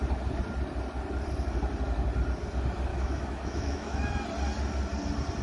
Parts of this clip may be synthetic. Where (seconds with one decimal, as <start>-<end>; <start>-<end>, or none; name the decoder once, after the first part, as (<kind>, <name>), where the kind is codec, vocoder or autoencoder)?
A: 2.9-4.1 (autoencoder, DAC-VAE)